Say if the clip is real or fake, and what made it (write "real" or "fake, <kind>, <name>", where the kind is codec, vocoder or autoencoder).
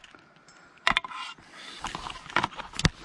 real